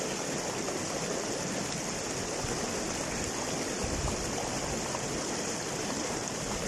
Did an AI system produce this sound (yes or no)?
no